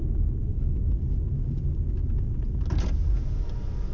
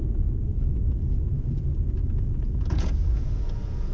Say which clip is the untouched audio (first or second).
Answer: first